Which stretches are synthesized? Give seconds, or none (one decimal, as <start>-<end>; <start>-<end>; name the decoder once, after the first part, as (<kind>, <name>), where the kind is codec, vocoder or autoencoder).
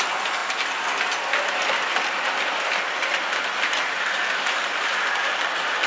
none